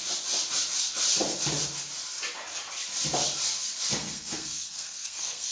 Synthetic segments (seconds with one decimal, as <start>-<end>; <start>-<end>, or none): 4.0-5.5